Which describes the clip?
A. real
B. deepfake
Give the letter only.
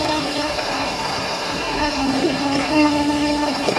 B